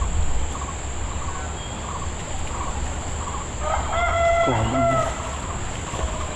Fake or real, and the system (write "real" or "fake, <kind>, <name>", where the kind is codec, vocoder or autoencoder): real